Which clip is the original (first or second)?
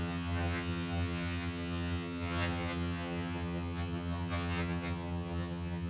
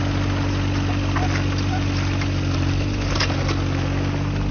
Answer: second